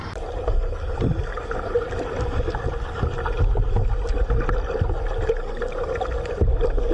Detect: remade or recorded recorded